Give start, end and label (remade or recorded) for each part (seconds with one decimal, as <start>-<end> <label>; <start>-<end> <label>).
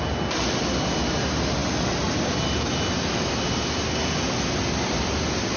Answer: 0.0-5.6 recorded